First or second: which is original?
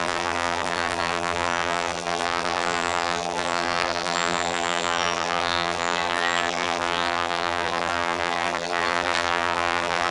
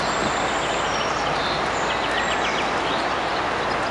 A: second